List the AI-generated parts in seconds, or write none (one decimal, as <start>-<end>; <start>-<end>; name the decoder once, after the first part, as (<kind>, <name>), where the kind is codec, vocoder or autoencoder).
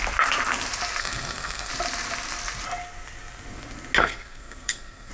1.0-1.7 (codec, SNAC); 4.0-5.1